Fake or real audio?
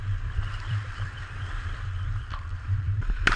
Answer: fake